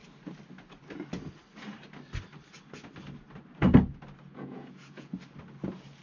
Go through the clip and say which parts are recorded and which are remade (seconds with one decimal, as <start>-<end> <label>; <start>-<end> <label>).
0.0-4.3 recorded; 4.3-5.1 remade; 5.1-6.0 recorded